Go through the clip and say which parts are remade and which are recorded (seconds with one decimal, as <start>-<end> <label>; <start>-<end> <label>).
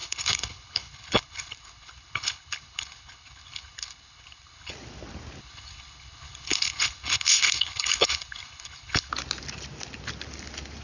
0.0-4.7 remade; 4.7-5.4 recorded; 5.4-9.1 remade; 9.1-10.8 recorded